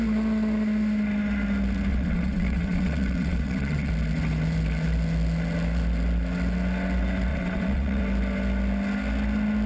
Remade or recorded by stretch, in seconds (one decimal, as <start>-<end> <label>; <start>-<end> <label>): 0.0-1.9 recorded; 1.9-3.9 remade; 3.9-7.3 recorded; 7.3-8.0 remade; 8.0-9.7 recorded